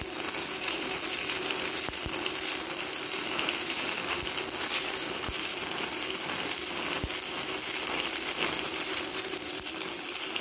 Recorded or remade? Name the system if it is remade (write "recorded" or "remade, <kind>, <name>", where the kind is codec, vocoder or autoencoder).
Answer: recorded